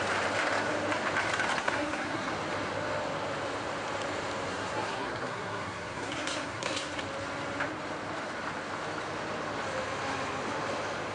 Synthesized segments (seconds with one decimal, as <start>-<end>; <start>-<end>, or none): 1.6-2.3; 4.5-7.0